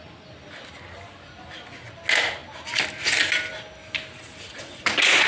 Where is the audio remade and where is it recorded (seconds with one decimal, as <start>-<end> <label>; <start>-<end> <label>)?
0.0-5.3 recorded